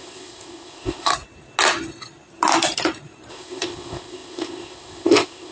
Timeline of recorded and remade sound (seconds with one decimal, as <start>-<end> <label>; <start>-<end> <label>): 0.0-1.1 remade; 1.1-3.3 recorded; 3.3-5.5 remade